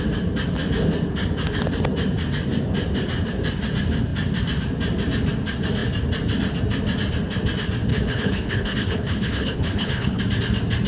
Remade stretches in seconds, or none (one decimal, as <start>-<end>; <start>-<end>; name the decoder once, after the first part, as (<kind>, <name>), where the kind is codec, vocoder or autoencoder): 7.9-10.2 (codec, HILCodec)